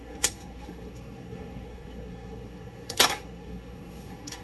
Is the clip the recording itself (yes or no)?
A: no